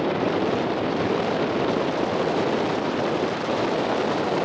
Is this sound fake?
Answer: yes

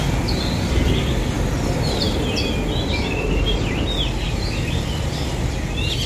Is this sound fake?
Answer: no